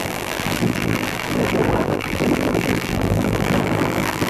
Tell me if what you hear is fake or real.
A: fake